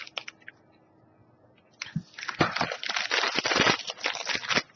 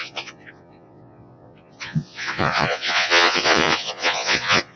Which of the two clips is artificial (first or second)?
second